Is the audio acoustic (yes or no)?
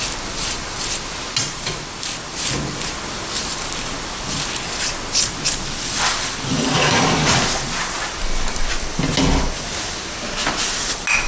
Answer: yes